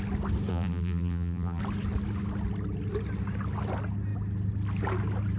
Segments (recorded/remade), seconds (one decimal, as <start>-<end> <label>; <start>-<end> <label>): 0.0-0.5 recorded; 0.5-1.6 remade; 1.6-5.4 recorded